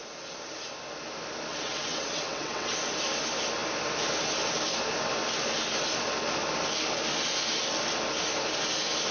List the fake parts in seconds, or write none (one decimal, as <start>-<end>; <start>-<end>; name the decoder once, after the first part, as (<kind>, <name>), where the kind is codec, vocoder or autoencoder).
1.5-2.7 (vocoder, WaveNeXt)